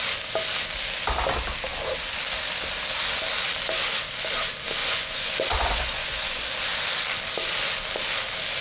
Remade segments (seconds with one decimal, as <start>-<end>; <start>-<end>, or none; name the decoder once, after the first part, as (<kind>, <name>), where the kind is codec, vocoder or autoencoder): 4.8-6.4 (vocoder, Vocos)